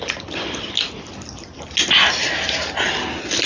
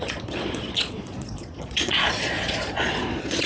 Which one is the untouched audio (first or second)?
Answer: first